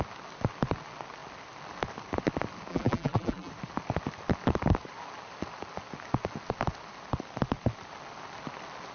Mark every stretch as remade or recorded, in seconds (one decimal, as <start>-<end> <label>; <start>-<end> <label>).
0.0-2.7 recorded; 2.7-3.5 remade; 3.5-8.9 recorded